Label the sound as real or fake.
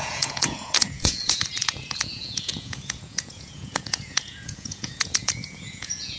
fake